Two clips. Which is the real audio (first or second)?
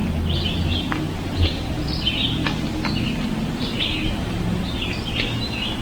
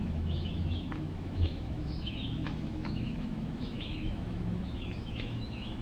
first